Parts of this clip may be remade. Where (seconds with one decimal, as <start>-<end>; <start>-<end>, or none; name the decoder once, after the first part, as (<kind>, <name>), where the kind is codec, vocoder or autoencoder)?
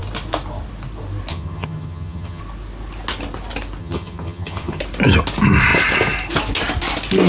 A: 1.3-2.4 (vocoder, HiFi-GAN); 3.8-4.8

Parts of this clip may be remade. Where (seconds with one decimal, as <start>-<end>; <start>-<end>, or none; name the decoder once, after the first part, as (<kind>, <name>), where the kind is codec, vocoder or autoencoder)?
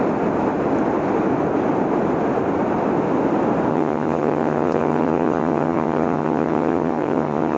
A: 3.7-7.6 (vocoder, HiFi-GAN)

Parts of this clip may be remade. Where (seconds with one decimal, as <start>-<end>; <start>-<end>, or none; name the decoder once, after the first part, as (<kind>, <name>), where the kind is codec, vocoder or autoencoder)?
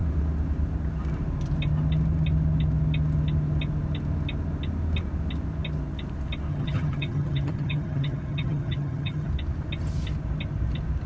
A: 6.5-9.3 (vocoder, HiFi-GAN)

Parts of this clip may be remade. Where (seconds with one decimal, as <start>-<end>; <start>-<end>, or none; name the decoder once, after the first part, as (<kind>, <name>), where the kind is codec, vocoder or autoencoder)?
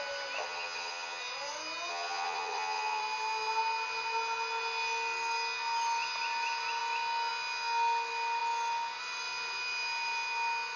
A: 0.4-1.2 (vocoder, HiFi-GAN); 1.9-3.0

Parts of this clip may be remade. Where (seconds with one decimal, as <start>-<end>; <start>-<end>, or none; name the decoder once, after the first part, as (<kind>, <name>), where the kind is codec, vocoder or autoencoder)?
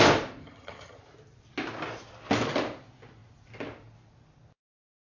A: 0.4-1.0 (vocoder, HiFi-GAN)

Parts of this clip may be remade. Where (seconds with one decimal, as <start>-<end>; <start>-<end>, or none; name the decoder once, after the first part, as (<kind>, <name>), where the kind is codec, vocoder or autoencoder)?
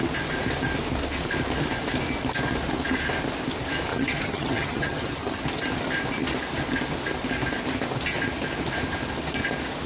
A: 3.9-5.4 (vocoder, HiFi-GAN)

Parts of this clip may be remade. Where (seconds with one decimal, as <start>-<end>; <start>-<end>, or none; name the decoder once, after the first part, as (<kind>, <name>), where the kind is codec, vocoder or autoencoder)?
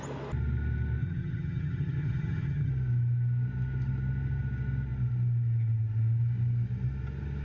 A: 1.0-2.7 (vocoder, HiFi-GAN)